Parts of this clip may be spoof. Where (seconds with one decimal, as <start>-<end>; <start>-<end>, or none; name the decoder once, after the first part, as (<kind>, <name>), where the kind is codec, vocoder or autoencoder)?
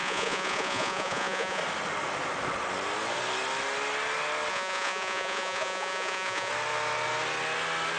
0.0-1.6 (vocoder, Vocos); 4.5-6.5